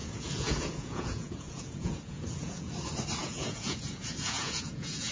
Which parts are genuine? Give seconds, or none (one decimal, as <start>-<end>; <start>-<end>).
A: 2.7-3.2